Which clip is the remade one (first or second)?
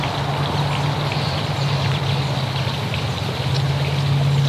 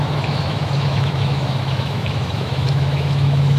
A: second